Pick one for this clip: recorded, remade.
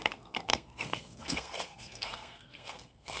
remade